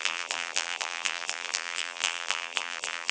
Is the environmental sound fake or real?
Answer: fake